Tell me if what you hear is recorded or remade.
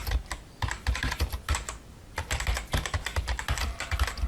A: recorded